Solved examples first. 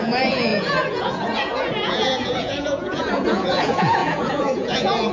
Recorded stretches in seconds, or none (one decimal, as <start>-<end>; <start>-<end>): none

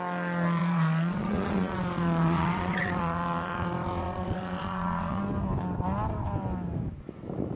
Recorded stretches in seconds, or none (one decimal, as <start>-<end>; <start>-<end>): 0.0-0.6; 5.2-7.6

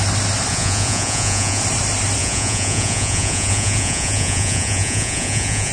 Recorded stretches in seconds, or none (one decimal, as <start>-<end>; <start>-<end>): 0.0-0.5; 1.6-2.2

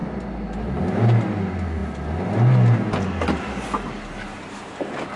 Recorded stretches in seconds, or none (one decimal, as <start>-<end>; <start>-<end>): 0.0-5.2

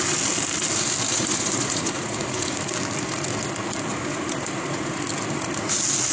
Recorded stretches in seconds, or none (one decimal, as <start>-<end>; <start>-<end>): 0.0-1.1; 2.6-3.9; 5.1-6.1

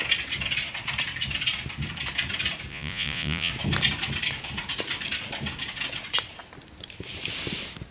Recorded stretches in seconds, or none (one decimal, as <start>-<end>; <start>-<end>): 0.0-2.7; 3.5-7.9

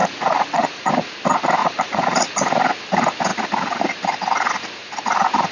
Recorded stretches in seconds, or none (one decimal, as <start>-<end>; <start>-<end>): 0.9-1.6; 2.3-5.5

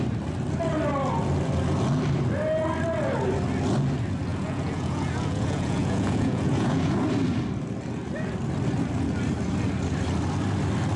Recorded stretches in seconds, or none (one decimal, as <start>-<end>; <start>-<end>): 0.0-4.3; 6.9-11.0